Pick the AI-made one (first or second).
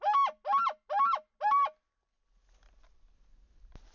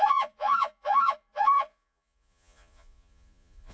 second